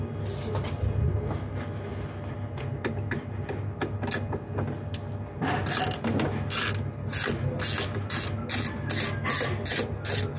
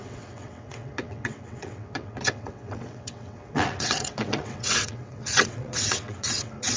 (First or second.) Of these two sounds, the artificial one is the second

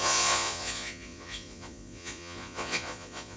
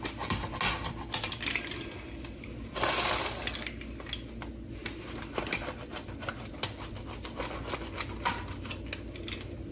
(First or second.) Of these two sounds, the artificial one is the first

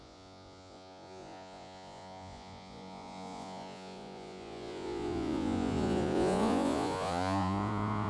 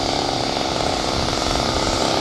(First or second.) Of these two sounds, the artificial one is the first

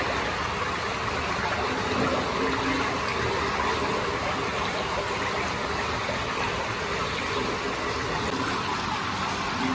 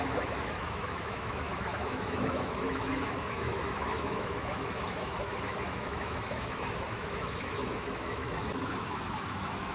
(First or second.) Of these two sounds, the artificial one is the second